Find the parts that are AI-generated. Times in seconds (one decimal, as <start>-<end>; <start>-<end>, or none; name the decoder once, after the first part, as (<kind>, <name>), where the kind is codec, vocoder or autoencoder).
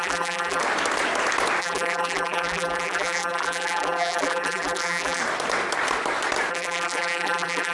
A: 0.0-0.6 (vocoder, BigVGAN v2); 1.6-5.2; 6.5-7.7